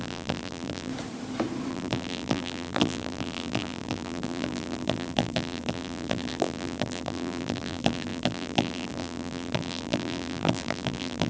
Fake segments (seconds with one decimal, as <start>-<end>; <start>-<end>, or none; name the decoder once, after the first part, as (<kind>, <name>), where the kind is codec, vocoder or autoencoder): 0.0-0.9 (vocoder, BigVGAN v2); 1.7-11.3